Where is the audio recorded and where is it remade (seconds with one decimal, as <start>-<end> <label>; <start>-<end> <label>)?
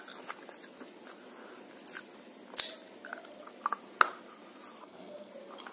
0.0-4.8 recorded; 4.8-5.3 remade; 5.3-5.7 recorded